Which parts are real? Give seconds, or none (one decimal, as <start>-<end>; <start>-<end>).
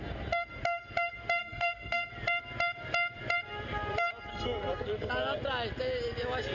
0.0-1.4; 2.1-4.3; 5.1-6.5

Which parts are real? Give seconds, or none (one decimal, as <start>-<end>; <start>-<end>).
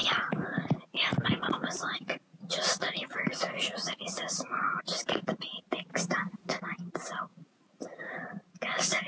4.8-7.3; 8.2-9.1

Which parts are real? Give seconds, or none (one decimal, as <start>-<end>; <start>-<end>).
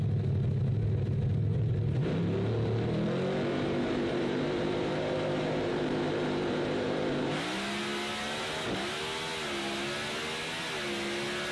0.0-1.5; 2.1-3.5; 7.4-11.5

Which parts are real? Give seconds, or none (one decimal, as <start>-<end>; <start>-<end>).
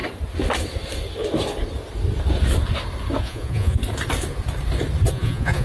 0.0-3.2; 3.8-5.1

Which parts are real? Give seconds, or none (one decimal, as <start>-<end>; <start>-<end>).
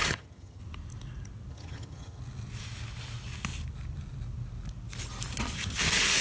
0.6-1.5; 2.2-6.2